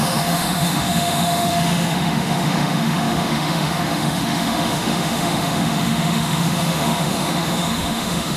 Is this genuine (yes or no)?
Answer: no